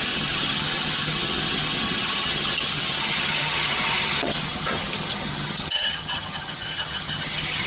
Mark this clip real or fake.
fake